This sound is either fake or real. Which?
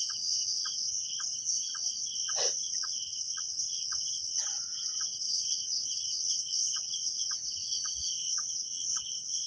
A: fake